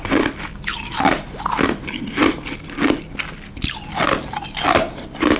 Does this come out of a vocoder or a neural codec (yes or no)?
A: no